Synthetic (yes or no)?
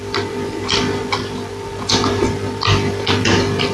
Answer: no